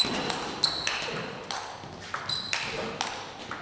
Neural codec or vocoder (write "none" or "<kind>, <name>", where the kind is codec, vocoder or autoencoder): none